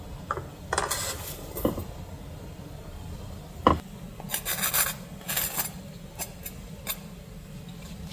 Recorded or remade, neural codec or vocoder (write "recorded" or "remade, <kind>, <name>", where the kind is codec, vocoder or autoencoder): recorded